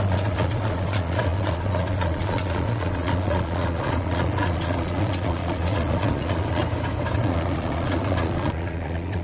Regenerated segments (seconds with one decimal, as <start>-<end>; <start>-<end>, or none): 0.0-6.6; 7.2-9.2